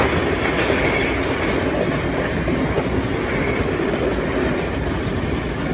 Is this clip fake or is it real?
real